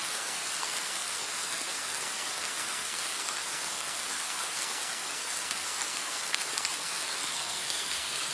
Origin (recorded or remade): remade